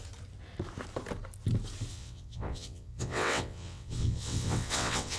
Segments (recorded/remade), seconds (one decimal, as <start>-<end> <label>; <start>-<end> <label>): 0.0-1.9 recorded; 1.9-5.2 remade